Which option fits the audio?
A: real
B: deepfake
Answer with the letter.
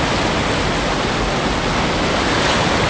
A